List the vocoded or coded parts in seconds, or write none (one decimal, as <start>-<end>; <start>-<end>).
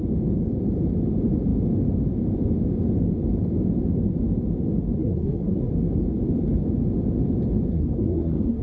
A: 5.0-5.7; 7.7-8.6